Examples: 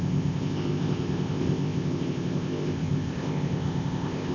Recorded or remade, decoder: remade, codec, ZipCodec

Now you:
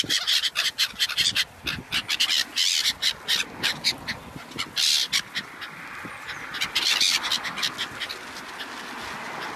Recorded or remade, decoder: recorded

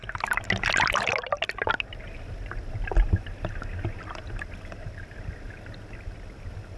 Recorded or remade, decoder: recorded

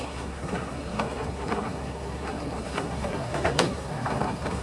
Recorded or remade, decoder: remade, codec, SNAC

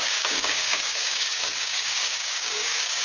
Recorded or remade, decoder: remade, codec, DAC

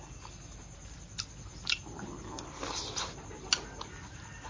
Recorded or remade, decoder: recorded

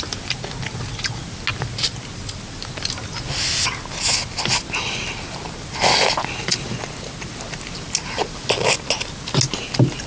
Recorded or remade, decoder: recorded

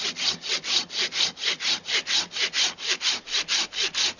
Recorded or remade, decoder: recorded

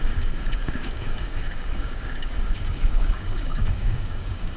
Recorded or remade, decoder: remade, codec, DAC